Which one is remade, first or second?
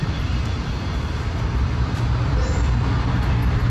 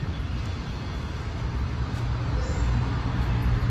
first